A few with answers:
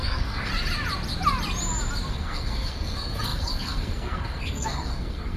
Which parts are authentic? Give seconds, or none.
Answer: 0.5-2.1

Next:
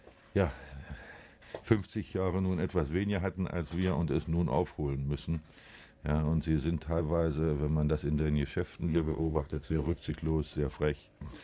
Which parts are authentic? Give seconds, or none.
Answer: 0.0-8.8; 10.1-11.4

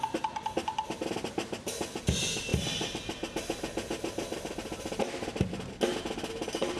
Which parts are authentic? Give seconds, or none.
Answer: 0.0-6.8

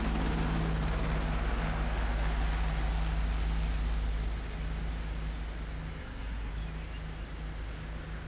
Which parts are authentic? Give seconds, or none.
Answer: 0.0-6.0; 6.5-8.3

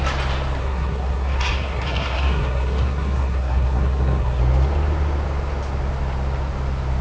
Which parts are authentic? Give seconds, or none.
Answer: 0.0-0.6; 4.4-7.0

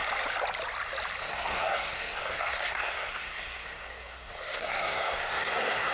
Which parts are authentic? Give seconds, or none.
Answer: 0.0-1.2

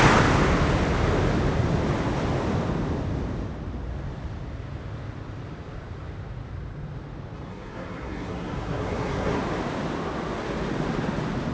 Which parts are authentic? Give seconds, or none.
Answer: 0.0-7.5; 9.4-11.5

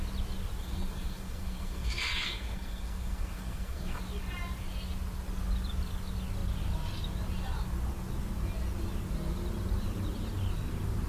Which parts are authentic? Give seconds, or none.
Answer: 0.0-0.6; 4.0-11.1